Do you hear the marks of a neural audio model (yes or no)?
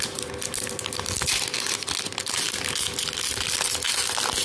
no